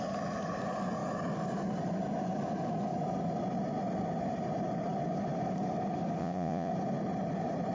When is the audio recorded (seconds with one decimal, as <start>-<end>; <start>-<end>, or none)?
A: 0.0-6.2; 6.7-7.7